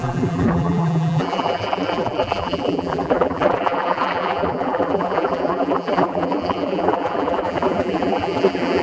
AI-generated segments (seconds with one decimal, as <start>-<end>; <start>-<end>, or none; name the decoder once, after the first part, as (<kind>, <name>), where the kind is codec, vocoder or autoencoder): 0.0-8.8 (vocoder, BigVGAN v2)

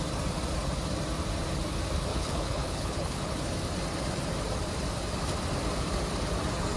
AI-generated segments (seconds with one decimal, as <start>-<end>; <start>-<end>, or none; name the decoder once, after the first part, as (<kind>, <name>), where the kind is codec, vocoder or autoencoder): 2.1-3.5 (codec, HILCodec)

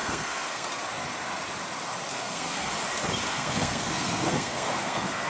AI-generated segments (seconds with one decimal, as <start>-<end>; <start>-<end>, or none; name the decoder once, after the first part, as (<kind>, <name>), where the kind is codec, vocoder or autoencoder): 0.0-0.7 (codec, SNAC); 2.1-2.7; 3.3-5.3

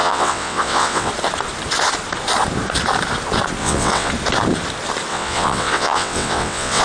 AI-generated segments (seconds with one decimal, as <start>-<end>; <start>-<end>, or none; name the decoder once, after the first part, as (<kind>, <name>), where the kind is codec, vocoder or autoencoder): 0.0-1.1 (vocoder, WaveNeXt); 3.6-4.1; 5.1-6.8

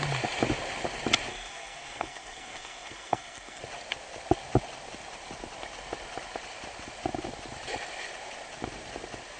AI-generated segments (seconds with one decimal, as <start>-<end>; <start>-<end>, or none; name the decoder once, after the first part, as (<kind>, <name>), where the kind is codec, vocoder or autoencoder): 1.3-3.6 (codec, SNAC)

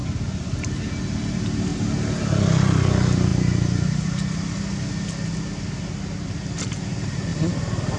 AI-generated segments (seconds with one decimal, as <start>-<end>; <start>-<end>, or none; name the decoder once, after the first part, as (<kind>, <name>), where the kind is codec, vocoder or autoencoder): none

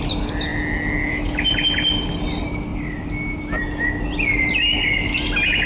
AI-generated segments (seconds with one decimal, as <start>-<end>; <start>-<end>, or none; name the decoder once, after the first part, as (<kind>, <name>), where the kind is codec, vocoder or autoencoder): none

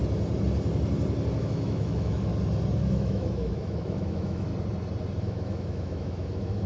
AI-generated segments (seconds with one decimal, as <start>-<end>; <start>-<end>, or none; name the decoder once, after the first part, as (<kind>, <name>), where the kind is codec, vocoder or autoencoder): 1.4-2.3 (autoencoder, DAC-VAE); 2.8-4.5; 5.2-6.7